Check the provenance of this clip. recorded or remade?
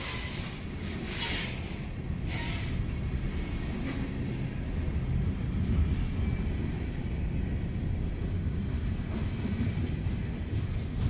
recorded